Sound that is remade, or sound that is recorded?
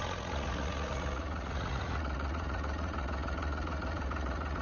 remade